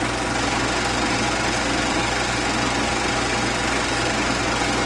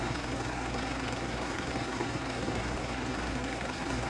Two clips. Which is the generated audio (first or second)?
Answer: second